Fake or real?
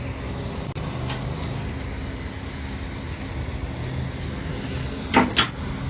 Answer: real